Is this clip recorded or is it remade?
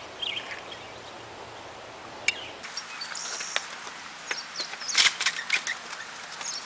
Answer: recorded